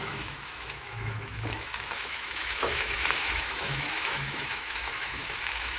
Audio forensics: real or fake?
fake